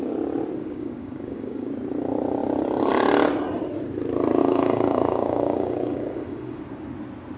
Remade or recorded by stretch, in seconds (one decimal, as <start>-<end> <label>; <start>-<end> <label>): 0.0-0.6 recorded; 0.6-1.7 remade; 1.7-4.4 recorded; 4.4-6.6 remade; 6.6-7.4 recorded